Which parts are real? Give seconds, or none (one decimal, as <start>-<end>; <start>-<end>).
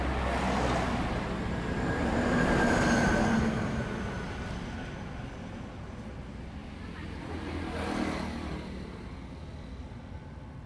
0.0-3.2; 3.8-10.7